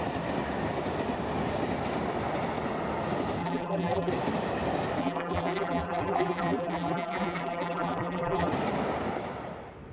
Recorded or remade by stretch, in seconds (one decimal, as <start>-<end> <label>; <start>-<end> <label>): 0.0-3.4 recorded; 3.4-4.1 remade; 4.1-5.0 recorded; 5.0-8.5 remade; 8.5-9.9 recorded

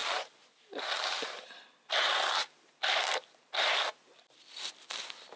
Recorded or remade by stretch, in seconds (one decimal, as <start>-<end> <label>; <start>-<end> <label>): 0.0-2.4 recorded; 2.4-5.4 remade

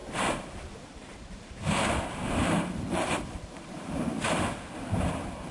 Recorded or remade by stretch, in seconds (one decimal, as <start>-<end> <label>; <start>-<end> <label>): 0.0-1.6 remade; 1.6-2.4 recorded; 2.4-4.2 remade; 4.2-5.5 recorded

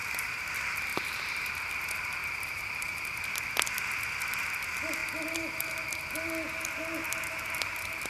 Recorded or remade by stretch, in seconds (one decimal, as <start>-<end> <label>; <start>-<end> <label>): 0.0-0.5 remade; 0.5-0.9 recorded; 0.9-1.5 remade; 1.5-2.2 recorded; 2.2-3.2 remade; 3.2-8.1 recorded